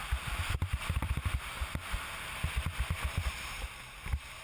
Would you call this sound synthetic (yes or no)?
no